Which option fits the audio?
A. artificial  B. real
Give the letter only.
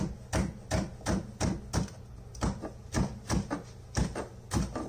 B